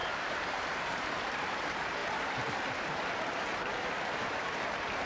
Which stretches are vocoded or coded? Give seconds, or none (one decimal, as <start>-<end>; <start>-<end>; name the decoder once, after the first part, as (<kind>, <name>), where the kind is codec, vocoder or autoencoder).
0.0-5.1 (vocoder, BigVGAN v2)